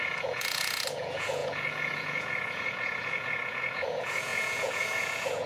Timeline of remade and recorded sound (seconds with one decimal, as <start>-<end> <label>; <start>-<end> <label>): 0.0-5.5 remade